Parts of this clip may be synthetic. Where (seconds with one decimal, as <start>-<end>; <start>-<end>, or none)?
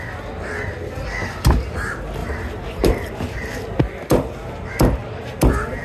2.2-3.7